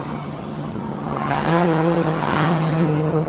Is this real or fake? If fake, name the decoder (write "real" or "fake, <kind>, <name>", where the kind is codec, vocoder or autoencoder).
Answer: fake, vocoder, HiFi-GAN